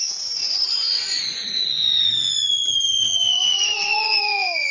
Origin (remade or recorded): remade